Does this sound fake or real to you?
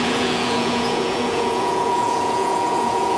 fake